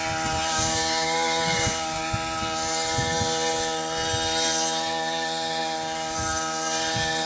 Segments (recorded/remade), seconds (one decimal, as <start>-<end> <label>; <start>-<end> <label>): 0.0-0.5 recorded; 0.5-2.0 remade; 2.0-7.3 recorded

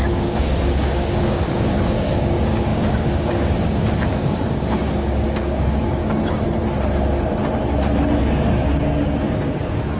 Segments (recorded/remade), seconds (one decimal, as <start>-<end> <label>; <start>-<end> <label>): 0.0-6.0 remade; 6.0-8.2 recorded; 8.2-10.0 remade

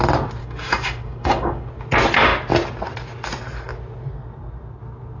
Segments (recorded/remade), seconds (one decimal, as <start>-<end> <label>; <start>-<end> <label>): 0.0-0.4 recorded; 0.4-1.7 remade; 1.7-5.2 recorded

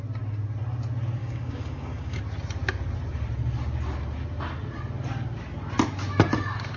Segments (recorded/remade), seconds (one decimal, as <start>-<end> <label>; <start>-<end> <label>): 0.0-1.2 recorded; 1.2-2.2 remade; 2.2-6.8 recorded